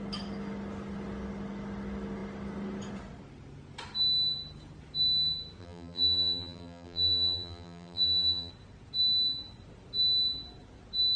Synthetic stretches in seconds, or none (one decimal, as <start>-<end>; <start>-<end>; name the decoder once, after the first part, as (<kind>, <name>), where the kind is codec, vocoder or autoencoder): 5.6-8.5 (vocoder, BigVGAN v2)